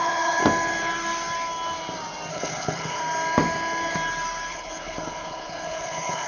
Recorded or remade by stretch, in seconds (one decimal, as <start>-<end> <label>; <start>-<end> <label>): 0.0-0.4 remade; 0.4-2.3 recorded; 2.3-3.0 remade; 3.0-4.5 recorded; 4.5-6.3 remade